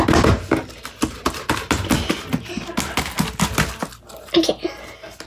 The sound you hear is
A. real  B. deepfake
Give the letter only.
A